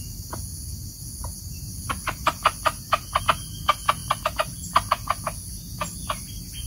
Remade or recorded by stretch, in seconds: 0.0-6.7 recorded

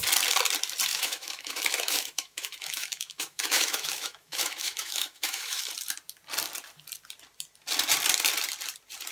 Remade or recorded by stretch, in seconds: 0.0-0.9 recorded; 0.9-5.7 remade; 5.7-9.1 recorded

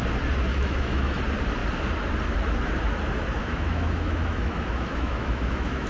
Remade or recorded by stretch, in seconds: 0.0-0.5 recorded; 0.5-1.2 remade; 1.2-3.4 recorded; 3.4-5.9 remade